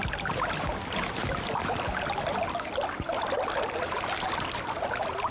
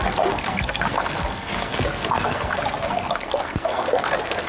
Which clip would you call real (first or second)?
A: first